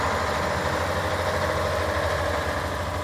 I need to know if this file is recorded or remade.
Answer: recorded